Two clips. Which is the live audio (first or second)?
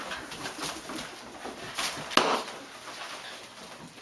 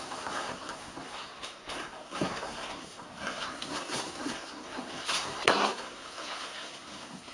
first